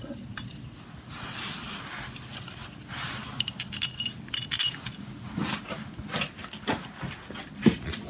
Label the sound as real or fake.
real